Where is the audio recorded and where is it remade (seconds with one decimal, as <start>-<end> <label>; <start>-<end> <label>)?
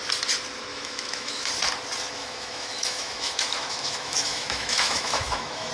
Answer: 0.0-0.7 recorded; 0.7-1.5 remade; 1.5-2.2 recorded; 2.2-5.7 remade